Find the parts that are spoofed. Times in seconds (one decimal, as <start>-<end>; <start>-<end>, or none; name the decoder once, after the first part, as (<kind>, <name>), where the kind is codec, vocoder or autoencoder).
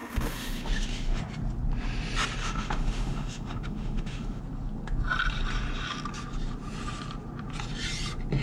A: 0.0-1.2 (autoencoder, DAC-VAE); 2.4-4.4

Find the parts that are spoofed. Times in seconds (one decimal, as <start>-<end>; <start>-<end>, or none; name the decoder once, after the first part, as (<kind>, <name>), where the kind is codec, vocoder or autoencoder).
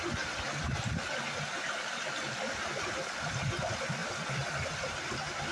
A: none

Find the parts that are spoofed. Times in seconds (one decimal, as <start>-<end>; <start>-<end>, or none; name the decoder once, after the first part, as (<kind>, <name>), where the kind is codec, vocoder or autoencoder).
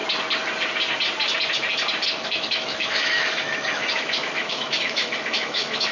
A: 2.1-5.9 (autoencoder, DAC-VAE)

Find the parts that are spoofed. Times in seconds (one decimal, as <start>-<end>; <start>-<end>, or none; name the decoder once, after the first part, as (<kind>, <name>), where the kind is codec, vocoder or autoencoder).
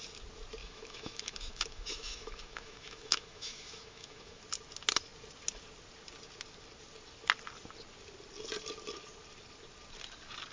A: 0.6-4.4 (autoencoder, DAC-VAE)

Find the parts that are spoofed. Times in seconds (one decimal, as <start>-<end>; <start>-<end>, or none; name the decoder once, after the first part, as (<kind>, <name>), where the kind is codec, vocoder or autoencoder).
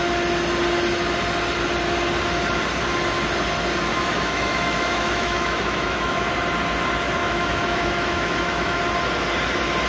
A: 3.9-6.3 (autoencoder, DAC-VAE); 7.2-8.8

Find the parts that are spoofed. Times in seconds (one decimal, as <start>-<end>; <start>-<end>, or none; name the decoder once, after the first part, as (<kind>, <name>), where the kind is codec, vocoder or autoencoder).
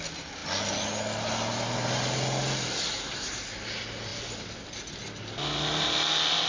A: none